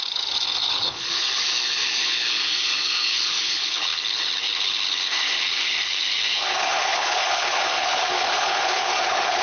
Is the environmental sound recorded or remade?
remade